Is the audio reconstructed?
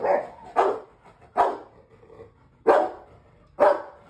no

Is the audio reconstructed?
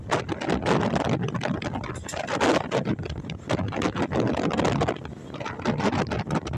no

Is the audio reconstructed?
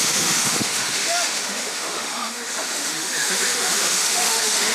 yes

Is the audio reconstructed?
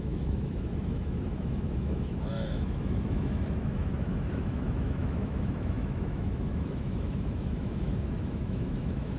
yes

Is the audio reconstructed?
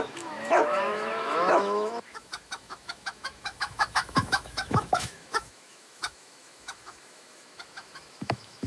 yes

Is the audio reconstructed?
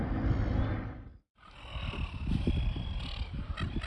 no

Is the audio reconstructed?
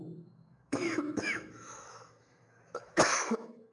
yes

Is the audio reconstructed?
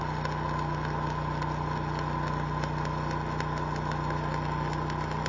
no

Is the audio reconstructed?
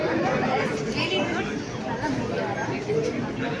no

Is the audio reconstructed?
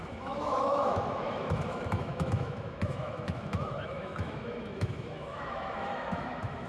yes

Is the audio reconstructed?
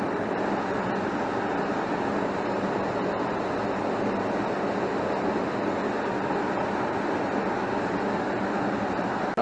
no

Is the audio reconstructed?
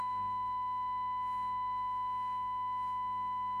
yes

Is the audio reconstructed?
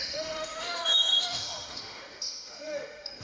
yes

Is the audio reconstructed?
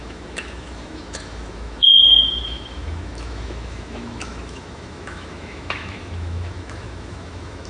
yes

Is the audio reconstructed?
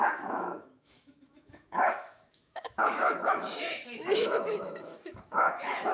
yes